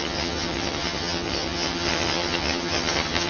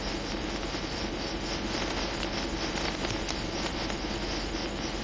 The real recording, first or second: second